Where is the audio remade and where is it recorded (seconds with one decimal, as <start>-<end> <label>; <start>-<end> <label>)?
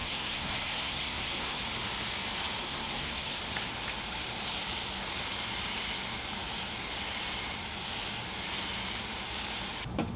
0.0-1.6 remade; 1.6-2.6 recorded; 2.6-3.4 remade; 3.4-10.2 recorded